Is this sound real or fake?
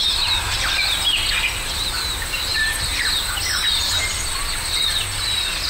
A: real